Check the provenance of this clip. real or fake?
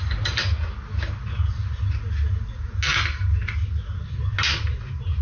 real